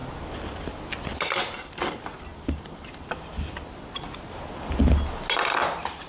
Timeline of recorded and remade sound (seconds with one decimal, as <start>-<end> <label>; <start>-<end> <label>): 0.0-6.1 recorded